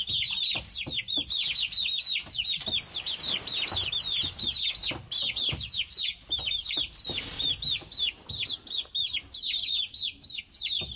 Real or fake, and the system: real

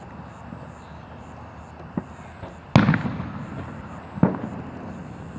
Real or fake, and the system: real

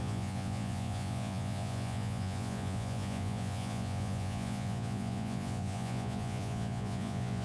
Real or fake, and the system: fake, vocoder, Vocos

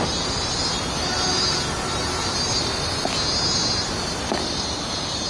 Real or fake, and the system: fake, vocoder, BigVGAN v2